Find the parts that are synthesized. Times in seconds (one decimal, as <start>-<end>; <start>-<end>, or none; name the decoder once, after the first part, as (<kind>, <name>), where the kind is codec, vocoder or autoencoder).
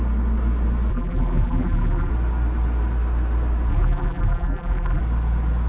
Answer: 0.9-2.1 (vocoder, BigVGAN v2); 3.7-5.0